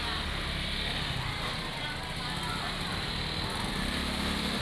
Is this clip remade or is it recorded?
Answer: recorded